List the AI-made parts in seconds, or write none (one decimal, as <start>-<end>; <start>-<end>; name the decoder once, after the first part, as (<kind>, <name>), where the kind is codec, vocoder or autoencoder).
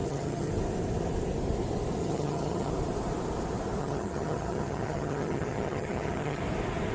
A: 0.0-0.5 (vocoder, HiFi-GAN); 2.0-2.7; 3.8-6.4